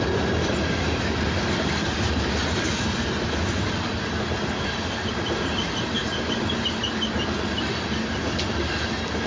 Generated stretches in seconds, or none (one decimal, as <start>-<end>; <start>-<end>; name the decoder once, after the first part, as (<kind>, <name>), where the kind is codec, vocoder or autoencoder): none